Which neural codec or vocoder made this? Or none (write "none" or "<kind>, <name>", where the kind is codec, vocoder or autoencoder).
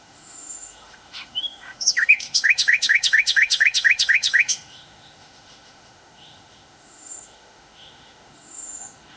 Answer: autoencoder, DAC-VAE